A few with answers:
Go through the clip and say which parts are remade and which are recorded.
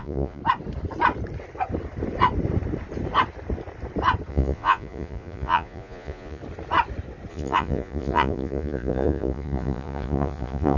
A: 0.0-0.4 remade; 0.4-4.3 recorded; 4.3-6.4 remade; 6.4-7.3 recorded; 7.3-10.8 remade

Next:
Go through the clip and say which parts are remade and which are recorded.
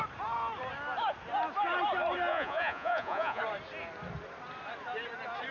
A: 0.0-2.3 recorded; 2.3-3.4 remade; 3.4-5.5 recorded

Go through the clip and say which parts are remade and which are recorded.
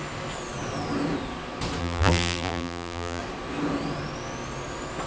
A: 0.0-1.8 recorded; 1.8-3.2 remade; 3.2-5.1 recorded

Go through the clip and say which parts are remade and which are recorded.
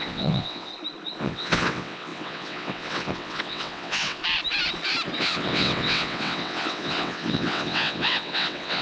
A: 0.0-0.7 remade; 0.7-1.2 recorded; 1.2-4.2 remade; 4.2-5.2 recorded; 5.2-8.8 remade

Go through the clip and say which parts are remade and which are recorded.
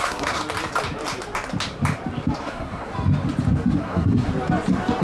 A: 0.0-0.4 remade; 0.4-2.4 recorded; 2.4-2.9 remade; 2.9-3.8 recorded; 3.8-4.3 remade; 4.3-5.0 recorded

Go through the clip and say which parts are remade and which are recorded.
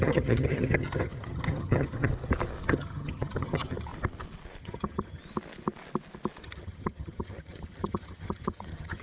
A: 0.0-2.1 remade; 2.1-2.7 recorded; 2.7-3.9 remade; 3.9-4.6 recorded; 4.6-5.2 remade; 5.2-6.4 recorded; 6.4-9.0 remade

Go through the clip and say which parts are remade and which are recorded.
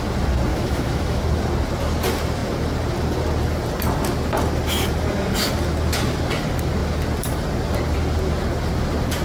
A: 0.0-0.5 recorded; 0.5-1.2 remade; 1.2-9.2 recorded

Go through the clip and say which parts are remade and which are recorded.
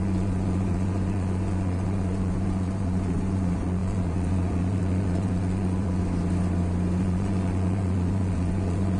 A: 0.0-6.0 remade; 6.0-7.0 recorded; 7.0-9.0 remade